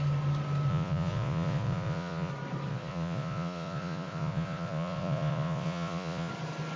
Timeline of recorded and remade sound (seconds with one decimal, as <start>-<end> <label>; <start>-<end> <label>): 0.0-0.7 recorded; 0.7-2.3 remade; 2.3-2.7 recorded; 2.7-6.3 remade; 6.3-6.8 recorded